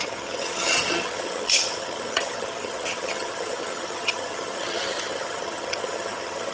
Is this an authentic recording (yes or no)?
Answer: no